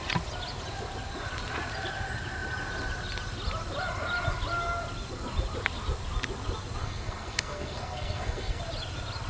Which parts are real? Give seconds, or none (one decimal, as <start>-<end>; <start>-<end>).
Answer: 0.0-6.8; 8.6-9.3